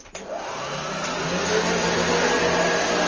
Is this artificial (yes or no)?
no